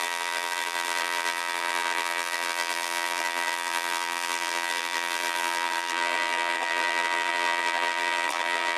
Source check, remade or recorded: remade